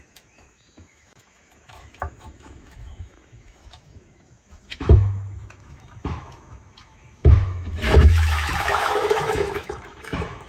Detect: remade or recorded remade